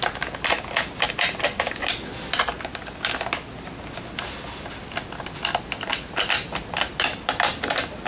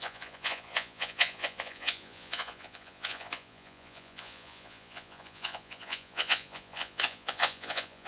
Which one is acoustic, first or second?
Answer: first